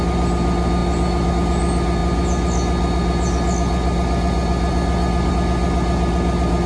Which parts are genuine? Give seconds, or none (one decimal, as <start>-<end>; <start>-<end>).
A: 0.0-6.7